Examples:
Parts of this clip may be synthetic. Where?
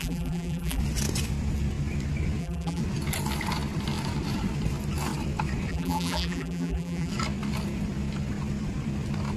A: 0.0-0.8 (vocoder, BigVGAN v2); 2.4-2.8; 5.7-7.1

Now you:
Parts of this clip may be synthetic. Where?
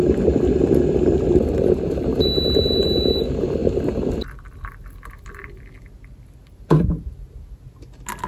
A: none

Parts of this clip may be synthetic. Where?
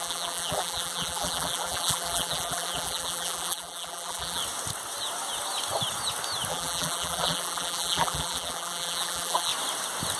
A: 0.0-4.4 (vocoder, BigVGAN v2); 6.5-9.5